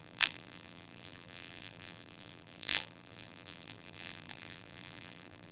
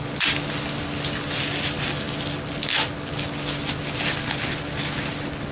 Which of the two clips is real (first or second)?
second